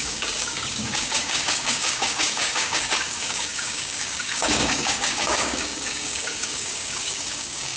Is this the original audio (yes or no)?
no